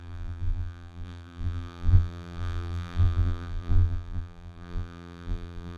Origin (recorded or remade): remade